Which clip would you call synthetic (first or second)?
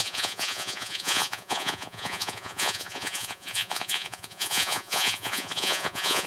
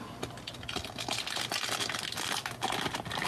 first